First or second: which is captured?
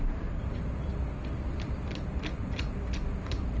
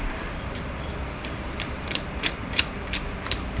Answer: first